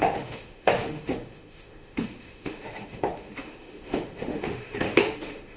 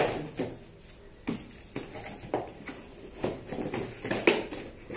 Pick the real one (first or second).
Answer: second